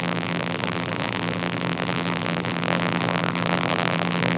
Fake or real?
fake